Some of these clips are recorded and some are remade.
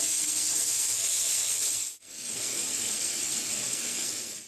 remade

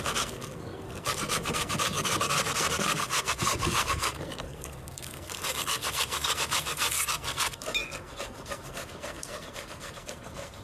remade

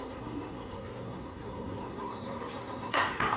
remade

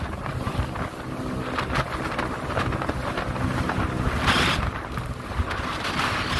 recorded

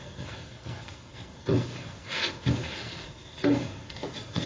remade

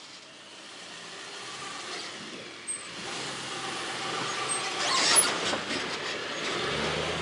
recorded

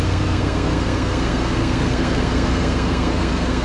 remade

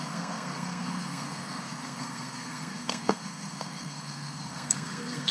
remade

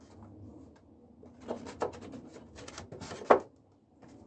recorded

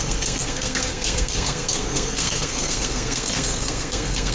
remade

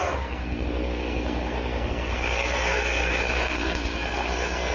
remade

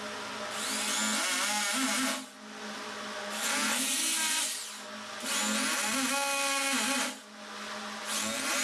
recorded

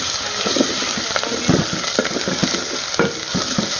recorded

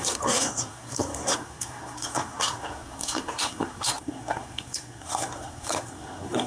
remade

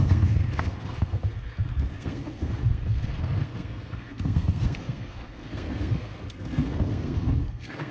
remade